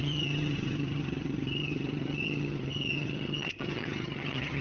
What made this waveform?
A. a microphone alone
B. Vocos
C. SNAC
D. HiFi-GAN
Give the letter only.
D